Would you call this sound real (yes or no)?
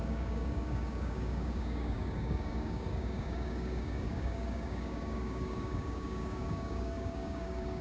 no